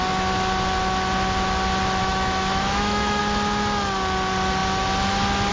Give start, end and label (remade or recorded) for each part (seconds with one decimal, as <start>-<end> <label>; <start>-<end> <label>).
0.0-2.0 recorded; 2.0-3.2 remade; 3.2-5.5 recorded